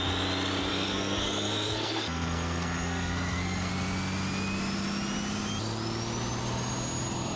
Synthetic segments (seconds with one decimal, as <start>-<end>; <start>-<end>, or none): 0.7-3.7